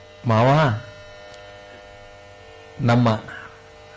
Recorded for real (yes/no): yes